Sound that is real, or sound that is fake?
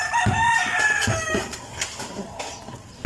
real